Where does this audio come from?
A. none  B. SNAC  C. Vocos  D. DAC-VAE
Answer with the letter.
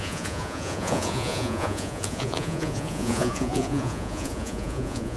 C